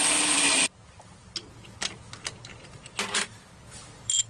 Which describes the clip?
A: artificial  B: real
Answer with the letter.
B